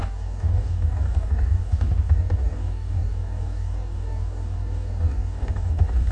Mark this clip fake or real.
fake